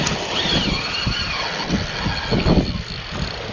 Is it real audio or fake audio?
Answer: real